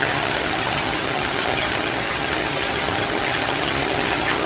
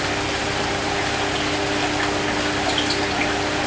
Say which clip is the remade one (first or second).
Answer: first